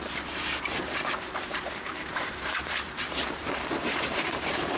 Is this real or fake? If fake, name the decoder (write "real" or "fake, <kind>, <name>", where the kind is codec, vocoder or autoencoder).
fake, vocoder, BigVGAN v2